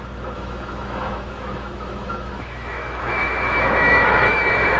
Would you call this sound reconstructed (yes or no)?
yes